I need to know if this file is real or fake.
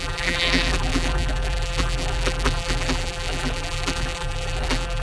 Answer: fake